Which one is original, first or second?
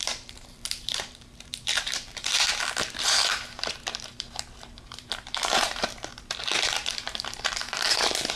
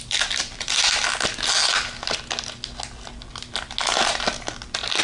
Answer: second